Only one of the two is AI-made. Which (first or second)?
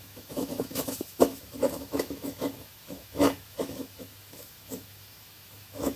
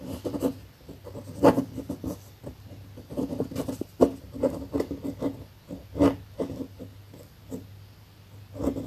first